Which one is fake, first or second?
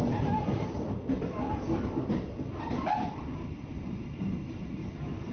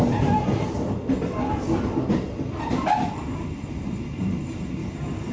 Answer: first